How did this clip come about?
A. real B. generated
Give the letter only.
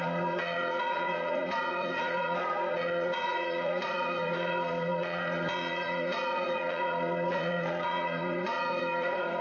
B